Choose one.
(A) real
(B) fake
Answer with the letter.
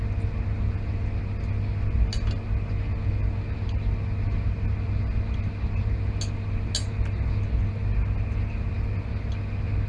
A